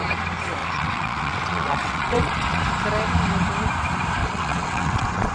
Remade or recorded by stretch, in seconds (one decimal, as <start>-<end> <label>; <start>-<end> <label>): 0.0-0.6 recorded; 0.6-2.6 remade; 2.6-4.2 recorded; 4.2-5.3 remade